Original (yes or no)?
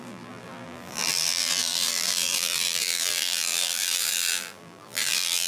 no